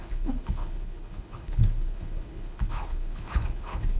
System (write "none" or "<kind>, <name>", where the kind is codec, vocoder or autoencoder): codec, HILCodec